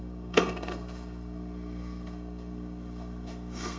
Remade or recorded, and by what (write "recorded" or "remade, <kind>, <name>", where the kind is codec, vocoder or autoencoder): remade, codec, SNAC